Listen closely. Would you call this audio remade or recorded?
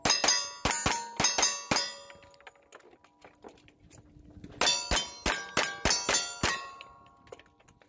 recorded